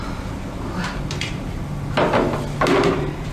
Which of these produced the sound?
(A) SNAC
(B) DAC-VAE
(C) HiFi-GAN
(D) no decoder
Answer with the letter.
D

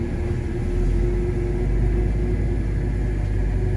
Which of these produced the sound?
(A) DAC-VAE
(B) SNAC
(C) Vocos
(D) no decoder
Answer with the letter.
D